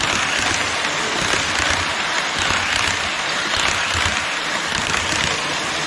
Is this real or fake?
real